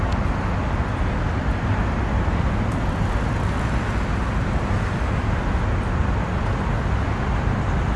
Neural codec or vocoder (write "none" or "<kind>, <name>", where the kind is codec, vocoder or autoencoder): none